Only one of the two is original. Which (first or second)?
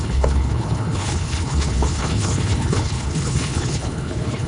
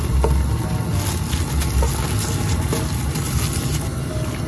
second